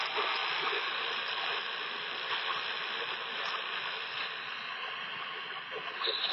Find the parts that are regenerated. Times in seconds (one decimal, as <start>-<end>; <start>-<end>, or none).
none